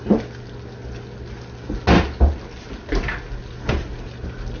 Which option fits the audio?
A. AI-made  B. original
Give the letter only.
B